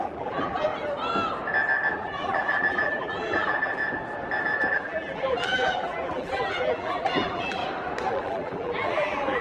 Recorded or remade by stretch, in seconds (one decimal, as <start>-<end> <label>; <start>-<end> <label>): 0.0-0.7 remade; 0.7-1.9 recorded; 1.9-3.8 remade; 3.8-4.7 recorded; 4.7-7.6 remade; 7.6-8.1 recorded; 8.1-9.4 remade

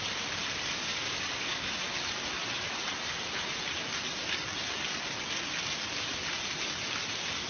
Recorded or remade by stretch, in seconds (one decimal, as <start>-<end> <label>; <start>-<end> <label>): 0.0-0.9 recorded; 0.9-1.7 remade; 1.7-7.5 recorded

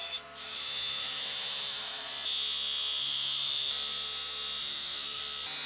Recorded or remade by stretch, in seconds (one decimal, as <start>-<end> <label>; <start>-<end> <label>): 0.0-2.1 remade; 2.1-3.0 recorded; 3.0-3.7 remade; 3.7-4.6 recorded; 4.6-5.2 remade; 5.2-5.7 recorded

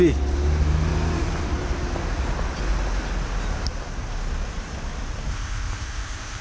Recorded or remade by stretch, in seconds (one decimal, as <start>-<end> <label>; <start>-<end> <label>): 0.0-5.3 recorded; 5.3-6.4 remade